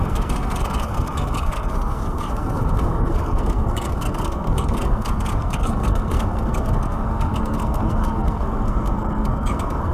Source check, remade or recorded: remade